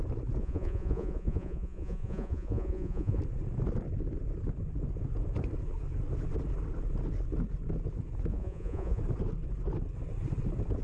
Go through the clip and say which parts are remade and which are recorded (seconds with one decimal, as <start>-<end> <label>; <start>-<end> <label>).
0.0-0.4 recorded; 0.4-3.2 remade; 3.2-8.3 recorded; 8.3-9.0 remade; 9.0-10.8 recorded